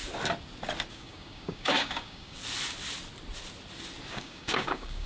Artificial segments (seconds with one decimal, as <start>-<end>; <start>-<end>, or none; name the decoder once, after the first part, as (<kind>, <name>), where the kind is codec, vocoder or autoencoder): 0.9-2.4 (codec, DAC); 4.1-5.1